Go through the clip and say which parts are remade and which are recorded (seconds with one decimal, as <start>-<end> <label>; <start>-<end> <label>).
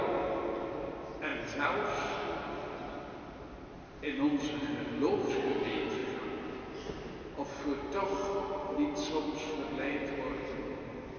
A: 0.0-11.2 recorded